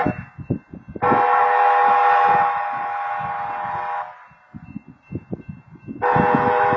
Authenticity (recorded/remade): recorded